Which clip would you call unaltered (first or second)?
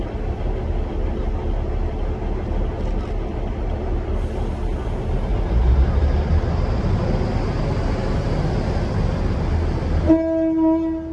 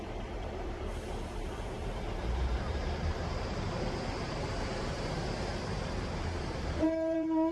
first